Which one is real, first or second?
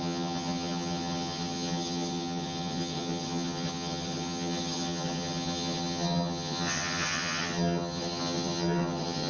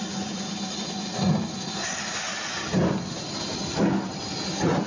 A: second